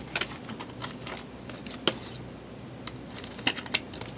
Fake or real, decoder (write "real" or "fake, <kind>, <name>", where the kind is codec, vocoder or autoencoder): real